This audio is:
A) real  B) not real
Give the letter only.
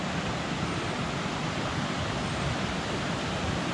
B